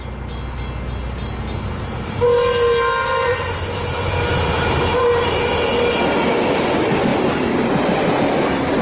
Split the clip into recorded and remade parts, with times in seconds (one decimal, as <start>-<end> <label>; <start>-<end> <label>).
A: 0.0-8.8 recorded